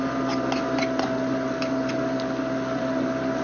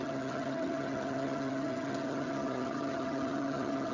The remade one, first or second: second